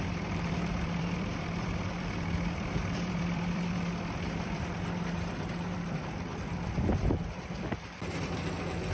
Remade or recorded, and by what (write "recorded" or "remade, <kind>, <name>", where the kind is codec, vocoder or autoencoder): remade, vocoder, BigVGAN v2